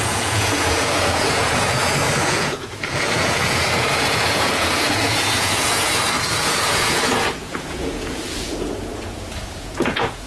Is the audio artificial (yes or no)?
yes